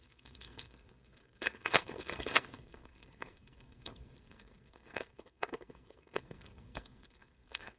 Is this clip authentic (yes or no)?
no